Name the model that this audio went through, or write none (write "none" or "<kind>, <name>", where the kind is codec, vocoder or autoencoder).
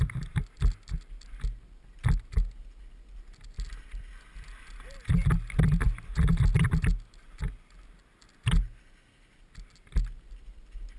none